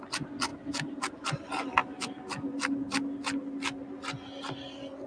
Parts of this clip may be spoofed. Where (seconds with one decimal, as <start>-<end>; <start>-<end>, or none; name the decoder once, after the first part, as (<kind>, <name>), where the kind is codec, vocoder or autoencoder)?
none